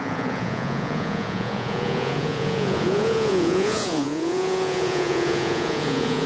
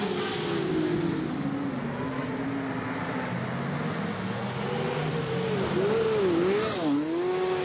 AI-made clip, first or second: first